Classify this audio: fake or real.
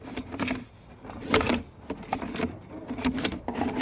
real